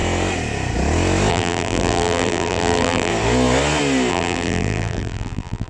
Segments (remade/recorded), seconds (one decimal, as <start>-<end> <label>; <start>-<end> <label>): 0.0-1.3 recorded; 1.3-3.1 remade; 3.1-4.1 recorded; 4.1-5.7 remade